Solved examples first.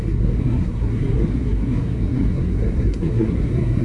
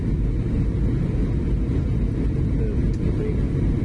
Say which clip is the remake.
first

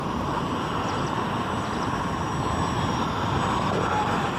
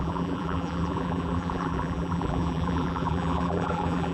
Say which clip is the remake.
second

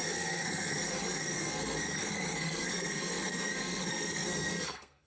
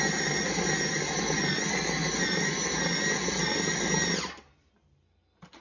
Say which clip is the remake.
first